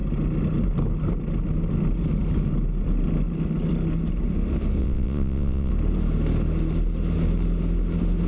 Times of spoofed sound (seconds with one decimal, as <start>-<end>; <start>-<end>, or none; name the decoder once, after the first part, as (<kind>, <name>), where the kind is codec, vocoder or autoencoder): 4.8-5.7 (vocoder, WaveNeXt)